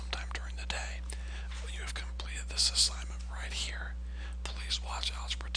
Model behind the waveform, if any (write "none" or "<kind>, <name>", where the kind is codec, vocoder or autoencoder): none